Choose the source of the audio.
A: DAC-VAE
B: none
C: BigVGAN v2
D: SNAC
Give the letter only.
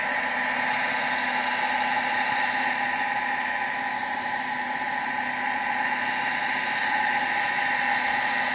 B